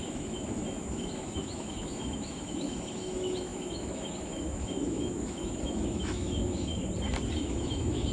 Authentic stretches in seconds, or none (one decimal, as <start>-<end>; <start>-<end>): 6.7-7.4